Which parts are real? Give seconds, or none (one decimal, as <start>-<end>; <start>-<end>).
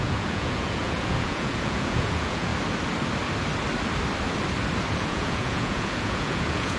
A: 2.5-4.9